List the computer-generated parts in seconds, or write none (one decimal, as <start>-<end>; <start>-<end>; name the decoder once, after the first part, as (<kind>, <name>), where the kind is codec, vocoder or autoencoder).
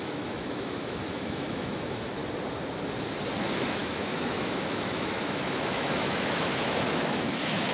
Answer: 0.0-2.2 (autoencoder, DAC-VAE); 3.4-7.7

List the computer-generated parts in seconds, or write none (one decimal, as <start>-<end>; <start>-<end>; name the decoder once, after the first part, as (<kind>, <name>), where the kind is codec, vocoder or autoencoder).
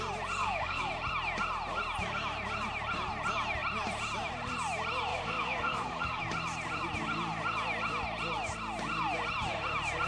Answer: 0.4-0.9 (codec, DAC); 5.1-6.2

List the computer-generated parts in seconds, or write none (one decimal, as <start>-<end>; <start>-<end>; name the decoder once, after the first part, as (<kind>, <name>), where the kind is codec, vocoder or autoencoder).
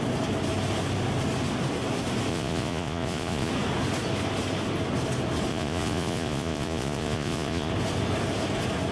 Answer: 2.3-3.5 (vocoder, Vocos); 5.5-7.7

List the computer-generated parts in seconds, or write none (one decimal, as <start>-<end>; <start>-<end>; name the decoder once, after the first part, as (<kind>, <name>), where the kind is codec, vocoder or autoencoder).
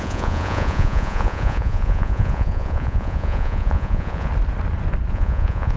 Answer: 0.0-4.3 (vocoder, Vocos); 5.1-5.8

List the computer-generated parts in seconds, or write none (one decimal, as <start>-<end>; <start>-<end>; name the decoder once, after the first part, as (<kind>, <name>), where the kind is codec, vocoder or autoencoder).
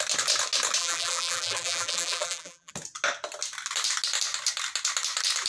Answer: 0.8-2.7 (vocoder, BigVGAN v2)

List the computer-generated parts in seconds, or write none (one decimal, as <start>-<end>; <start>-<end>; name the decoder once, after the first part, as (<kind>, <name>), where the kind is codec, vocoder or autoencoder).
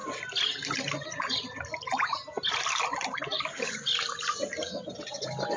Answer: 3.4-4.4 (vocoder, BigVGAN v2); 5.0-5.6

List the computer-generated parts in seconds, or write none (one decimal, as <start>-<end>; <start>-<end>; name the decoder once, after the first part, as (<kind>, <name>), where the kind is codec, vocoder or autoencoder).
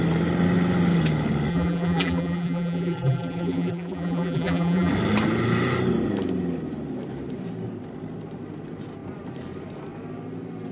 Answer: 1.5-4.9 (vocoder, BigVGAN v2)